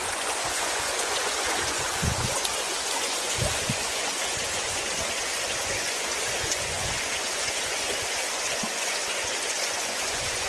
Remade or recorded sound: remade